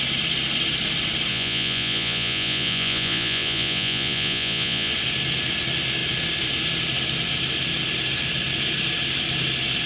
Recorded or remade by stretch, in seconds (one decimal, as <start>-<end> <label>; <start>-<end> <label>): 0.0-1.3 recorded; 1.3-4.9 remade; 4.9-9.9 recorded